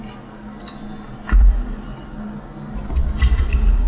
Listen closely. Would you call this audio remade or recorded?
recorded